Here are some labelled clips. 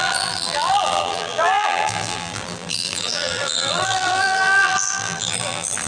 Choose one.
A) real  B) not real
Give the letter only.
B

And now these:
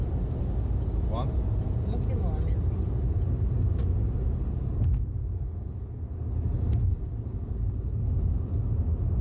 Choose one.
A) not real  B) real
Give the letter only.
B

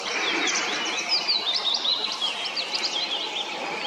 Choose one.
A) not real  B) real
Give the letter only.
B